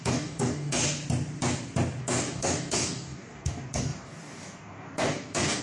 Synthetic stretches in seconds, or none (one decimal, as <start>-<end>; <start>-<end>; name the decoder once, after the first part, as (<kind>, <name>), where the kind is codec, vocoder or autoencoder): 0.0-0.8 (codec, DAC); 2.0-5.6